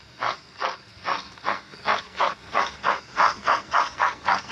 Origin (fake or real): fake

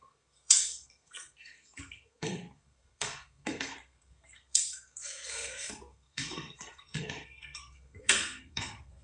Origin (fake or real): fake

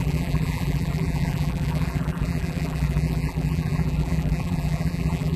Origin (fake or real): fake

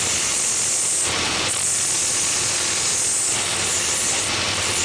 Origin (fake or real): real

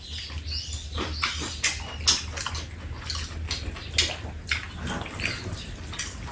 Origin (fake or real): real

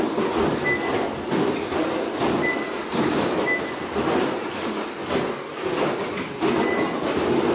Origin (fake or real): real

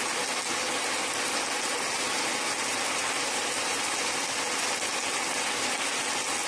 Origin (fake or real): real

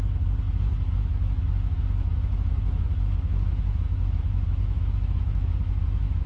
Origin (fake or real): fake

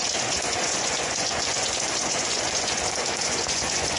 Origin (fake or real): fake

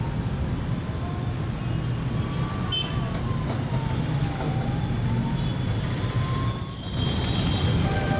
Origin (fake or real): real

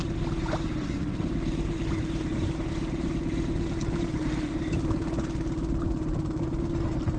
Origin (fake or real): real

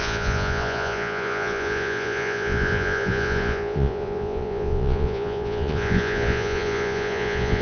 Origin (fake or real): fake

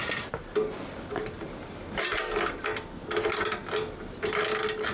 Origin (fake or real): real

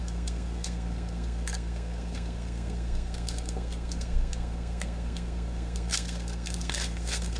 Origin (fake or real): fake